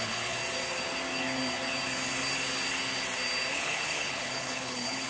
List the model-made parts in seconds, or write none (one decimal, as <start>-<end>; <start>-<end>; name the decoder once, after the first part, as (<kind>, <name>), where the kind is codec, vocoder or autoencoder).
0.0-0.4 (codec, HILCodec); 3.5-5.1